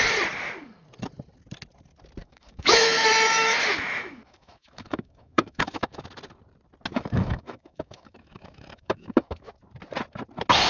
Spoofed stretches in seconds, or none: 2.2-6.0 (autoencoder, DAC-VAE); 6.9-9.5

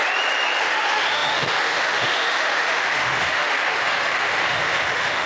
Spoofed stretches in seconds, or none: 0.6-5.3 (autoencoder, DAC-VAE)

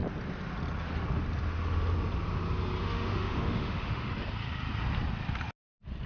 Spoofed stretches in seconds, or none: 2.8-4.1 (autoencoder, DAC-VAE)

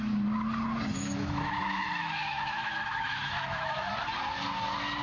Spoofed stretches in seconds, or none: 0.9-3.9 (autoencoder, DAC-VAE)

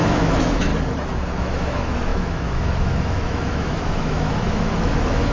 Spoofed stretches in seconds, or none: 0.0-0.7 (autoencoder, DAC-VAE); 1.4-5.3

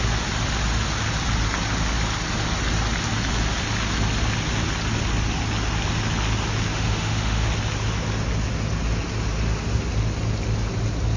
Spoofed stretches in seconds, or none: 6.7-7.5 (autoencoder, DAC-VAE)